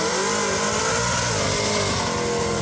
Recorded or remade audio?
recorded